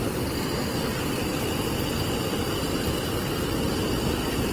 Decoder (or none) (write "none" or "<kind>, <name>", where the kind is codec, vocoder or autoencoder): none